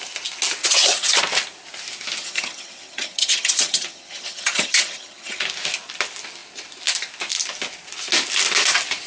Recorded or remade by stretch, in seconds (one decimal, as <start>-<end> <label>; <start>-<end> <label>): 0.0-0.6 recorded; 0.6-1.2 remade; 1.2-2.2 recorded; 2.2-5.4 remade; 5.4-9.1 recorded